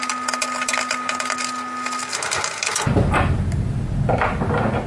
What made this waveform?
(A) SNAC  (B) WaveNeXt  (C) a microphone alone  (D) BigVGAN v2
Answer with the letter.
C